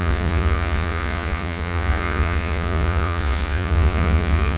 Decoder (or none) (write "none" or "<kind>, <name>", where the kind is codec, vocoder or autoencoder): vocoder, Vocos